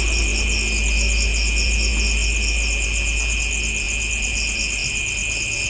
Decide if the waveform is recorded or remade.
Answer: recorded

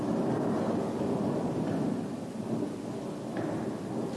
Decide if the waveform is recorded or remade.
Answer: recorded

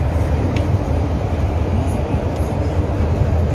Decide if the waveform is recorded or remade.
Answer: recorded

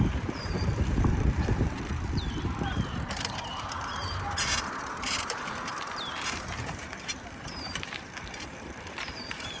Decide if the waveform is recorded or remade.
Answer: remade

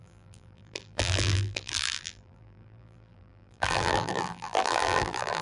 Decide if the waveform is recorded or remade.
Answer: remade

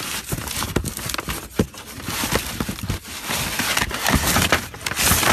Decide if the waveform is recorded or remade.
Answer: recorded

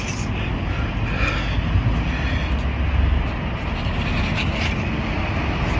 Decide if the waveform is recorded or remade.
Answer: recorded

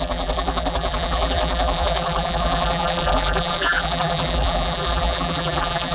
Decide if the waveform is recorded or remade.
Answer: remade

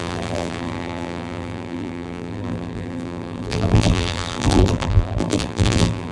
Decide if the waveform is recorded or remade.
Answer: remade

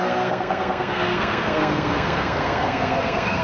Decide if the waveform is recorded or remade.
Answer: remade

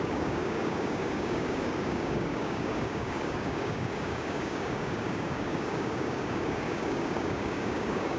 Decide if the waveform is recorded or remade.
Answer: remade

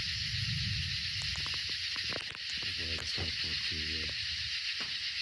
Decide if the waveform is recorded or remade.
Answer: recorded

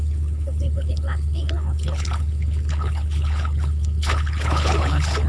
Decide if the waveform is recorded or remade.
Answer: remade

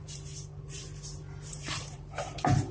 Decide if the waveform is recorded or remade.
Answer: remade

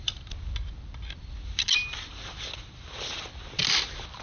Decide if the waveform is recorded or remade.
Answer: recorded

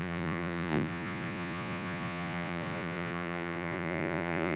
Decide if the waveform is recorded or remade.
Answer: remade